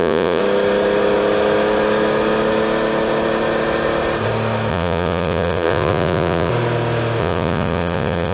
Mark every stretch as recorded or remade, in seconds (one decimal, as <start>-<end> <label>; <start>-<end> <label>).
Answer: 0.0-0.4 remade; 0.4-4.7 recorded; 4.7-6.5 remade; 6.5-7.2 recorded; 7.2-8.3 remade